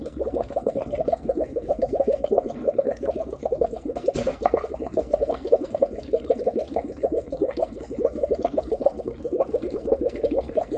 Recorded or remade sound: remade